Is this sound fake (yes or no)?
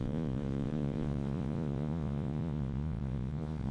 yes